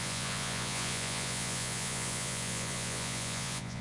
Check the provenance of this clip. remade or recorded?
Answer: remade